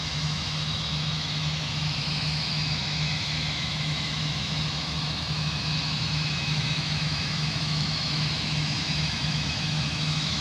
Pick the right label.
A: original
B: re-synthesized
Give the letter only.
B